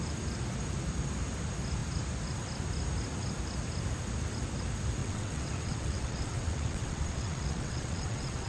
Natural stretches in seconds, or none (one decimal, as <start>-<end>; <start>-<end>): 0.0-5.0